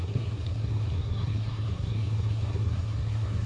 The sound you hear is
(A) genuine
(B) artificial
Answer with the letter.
B